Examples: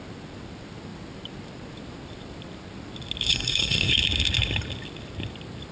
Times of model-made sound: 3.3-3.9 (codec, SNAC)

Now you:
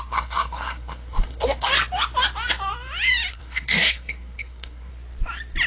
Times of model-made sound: 0.0-1.7 (codec, SNAC); 3.3-4.9

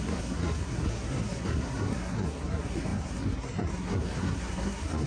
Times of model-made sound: 0.0-5.1 (codec, SNAC)

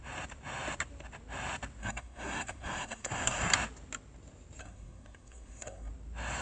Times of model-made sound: 1.8-3.5 (codec, SNAC); 4.6-5.9

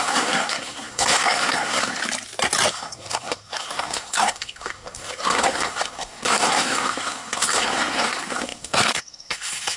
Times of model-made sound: 0.0-2.0 (codec, SNAC); 2.7-9.8